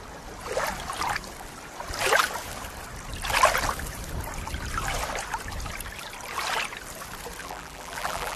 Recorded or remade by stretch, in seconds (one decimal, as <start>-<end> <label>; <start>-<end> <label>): 0.0-7.4 recorded; 7.4-8.4 remade